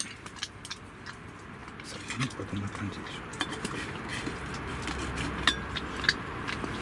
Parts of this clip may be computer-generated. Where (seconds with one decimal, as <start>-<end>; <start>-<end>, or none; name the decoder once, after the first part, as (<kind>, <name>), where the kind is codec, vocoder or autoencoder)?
none